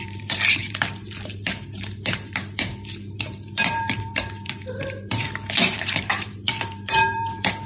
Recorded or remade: remade